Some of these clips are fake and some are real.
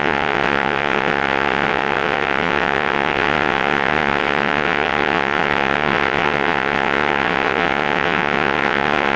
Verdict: fake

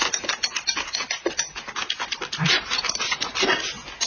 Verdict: real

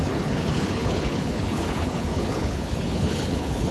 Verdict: fake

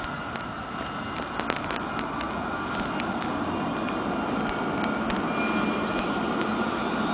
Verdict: real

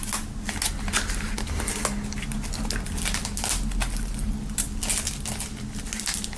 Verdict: real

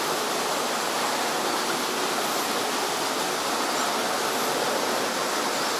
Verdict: real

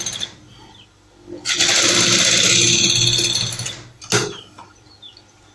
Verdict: real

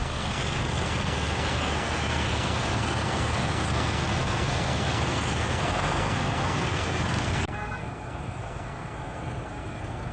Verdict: fake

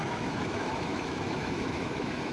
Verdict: fake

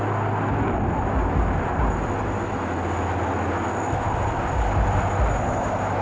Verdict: real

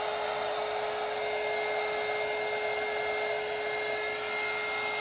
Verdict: real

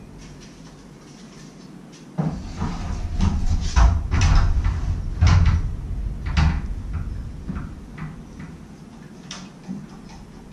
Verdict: real